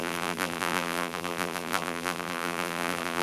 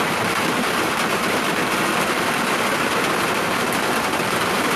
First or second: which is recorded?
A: second